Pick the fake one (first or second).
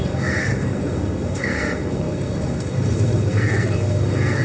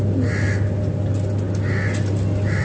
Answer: first